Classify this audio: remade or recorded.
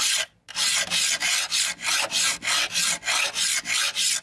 recorded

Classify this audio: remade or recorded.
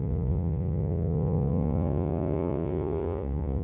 remade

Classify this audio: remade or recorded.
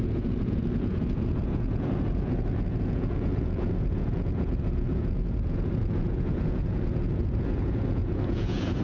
remade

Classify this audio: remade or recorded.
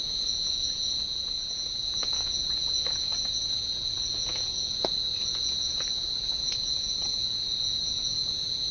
remade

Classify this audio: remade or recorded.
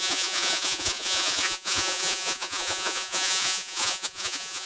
remade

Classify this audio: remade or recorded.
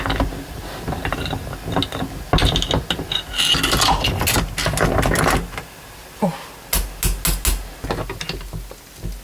recorded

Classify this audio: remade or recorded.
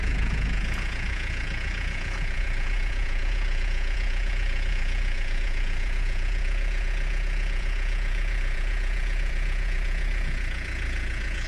remade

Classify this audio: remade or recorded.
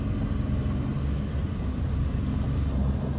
recorded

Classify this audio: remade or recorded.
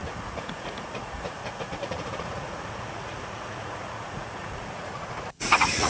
remade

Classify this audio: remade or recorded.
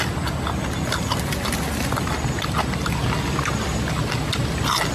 recorded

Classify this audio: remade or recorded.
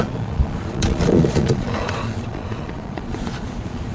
remade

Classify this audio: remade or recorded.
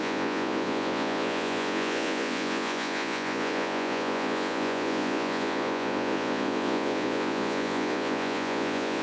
remade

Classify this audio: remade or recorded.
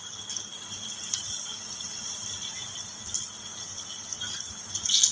recorded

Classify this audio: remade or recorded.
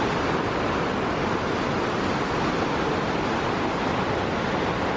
recorded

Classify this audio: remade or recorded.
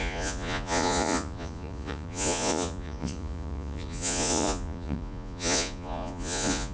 remade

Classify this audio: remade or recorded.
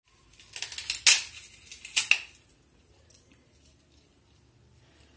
recorded